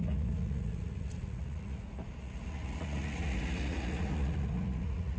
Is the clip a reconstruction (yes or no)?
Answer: yes